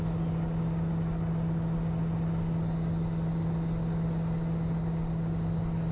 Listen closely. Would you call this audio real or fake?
real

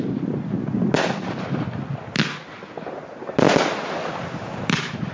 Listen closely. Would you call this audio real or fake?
real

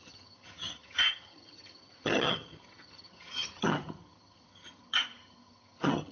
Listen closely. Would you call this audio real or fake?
fake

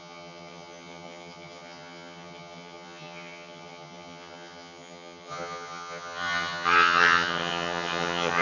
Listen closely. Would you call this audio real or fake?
fake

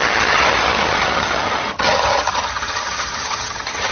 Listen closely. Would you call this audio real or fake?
fake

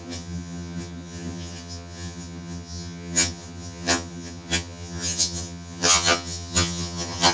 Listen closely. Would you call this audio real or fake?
fake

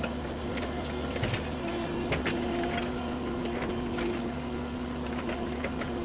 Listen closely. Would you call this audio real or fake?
real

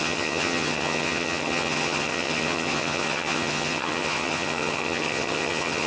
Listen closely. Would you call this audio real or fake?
fake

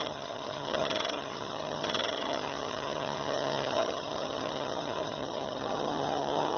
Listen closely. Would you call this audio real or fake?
fake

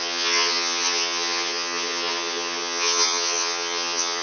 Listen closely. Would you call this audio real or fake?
fake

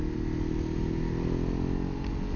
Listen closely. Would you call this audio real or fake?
real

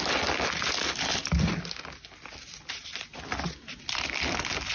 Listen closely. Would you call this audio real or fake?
real